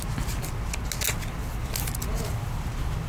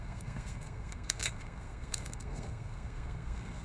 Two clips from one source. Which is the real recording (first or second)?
first